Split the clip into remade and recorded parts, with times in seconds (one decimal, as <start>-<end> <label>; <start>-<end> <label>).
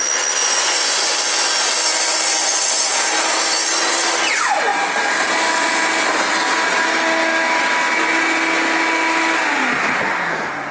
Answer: 0.0-0.4 recorded; 0.4-1.1 remade; 1.1-10.7 recorded